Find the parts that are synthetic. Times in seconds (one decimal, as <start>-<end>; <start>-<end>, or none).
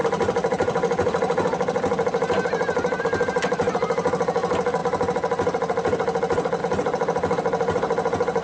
none